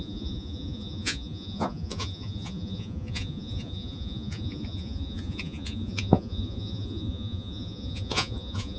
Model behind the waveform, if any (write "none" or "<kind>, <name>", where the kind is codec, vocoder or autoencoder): vocoder, Vocos